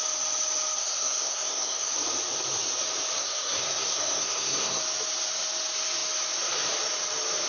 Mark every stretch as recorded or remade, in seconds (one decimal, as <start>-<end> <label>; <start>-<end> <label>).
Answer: 0.0-0.8 recorded; 0.8-1.9 remade; 1.9-3.2 recorded; 3.2-4.8 remade; 4.8-7.5 recorded